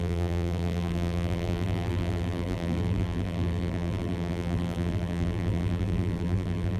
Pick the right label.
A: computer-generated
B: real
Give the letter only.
A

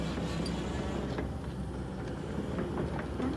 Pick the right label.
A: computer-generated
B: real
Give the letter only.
B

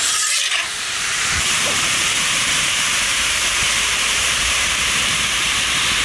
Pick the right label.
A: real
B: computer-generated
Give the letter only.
B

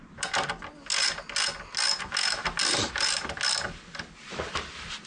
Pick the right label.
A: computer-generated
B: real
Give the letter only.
B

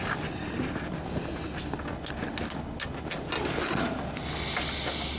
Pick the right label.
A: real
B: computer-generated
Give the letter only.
A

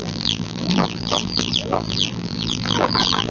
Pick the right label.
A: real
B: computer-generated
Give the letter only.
B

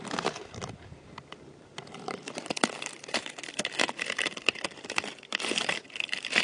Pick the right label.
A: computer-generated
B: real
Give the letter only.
A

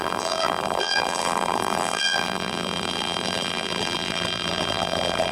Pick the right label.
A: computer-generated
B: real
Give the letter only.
A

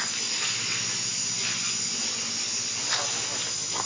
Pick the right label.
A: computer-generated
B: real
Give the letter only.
B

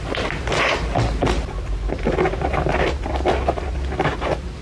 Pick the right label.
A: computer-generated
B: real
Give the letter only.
B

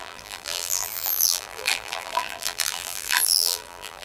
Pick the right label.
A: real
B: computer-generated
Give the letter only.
B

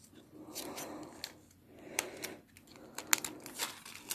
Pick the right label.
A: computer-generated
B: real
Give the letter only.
B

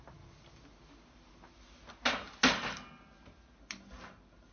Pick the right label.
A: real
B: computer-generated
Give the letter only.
A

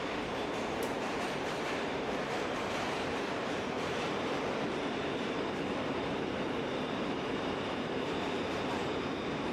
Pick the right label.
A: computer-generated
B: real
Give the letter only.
A